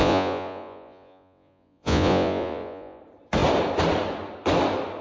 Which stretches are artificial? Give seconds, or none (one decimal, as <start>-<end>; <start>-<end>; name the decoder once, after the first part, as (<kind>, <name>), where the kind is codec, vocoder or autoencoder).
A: 0.0-3.0 (vocoder, Vocos)